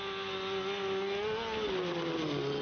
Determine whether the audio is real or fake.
real